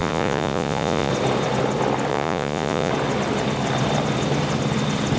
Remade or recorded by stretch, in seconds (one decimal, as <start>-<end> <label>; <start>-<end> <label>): 0.0-1.1 remade; 1.1-2.1 recorded; 2.1-2.9 remade; 2.9-5.2 recorded

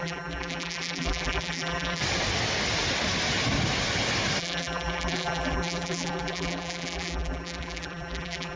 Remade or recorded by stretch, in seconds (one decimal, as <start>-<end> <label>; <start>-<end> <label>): 0.0-2.0 remade; 2.0-4.4 recorded; 4.4-8.6 remade

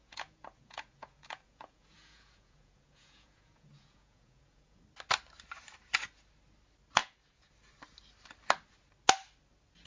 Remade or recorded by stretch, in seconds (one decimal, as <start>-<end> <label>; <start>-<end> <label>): 0.0-4.8 remade; 4.8-7.0 recorded; 7.0-7.5 remade; 7.5-9.9 recorded

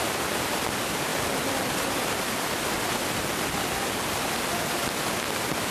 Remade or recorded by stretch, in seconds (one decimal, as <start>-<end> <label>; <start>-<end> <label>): 0.0-1.1 remade; 1.1-4.4 recorded; 4.4-5.7 remade

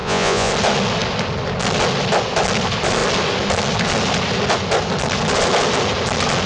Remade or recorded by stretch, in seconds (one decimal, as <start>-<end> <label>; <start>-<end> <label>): 0.0-0.5 remade; 0.5-6.5 recorded